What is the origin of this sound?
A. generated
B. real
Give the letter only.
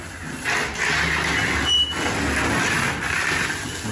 B